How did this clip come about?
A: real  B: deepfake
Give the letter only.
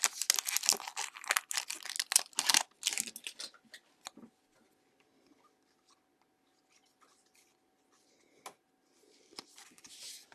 A